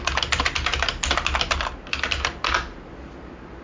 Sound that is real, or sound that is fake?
real